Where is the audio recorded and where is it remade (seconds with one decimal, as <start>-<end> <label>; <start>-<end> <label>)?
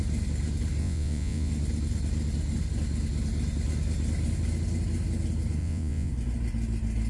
0.0-0.8 recorded; 0.8-1.5 remade; 1.5-5.6 recorded; 5.6-6.1 remade; 6.1-7.1 recorded